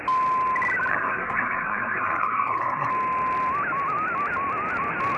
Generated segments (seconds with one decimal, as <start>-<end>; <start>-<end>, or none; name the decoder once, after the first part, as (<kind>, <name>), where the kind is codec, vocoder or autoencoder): 0.9-2.9 (codec, SNAC)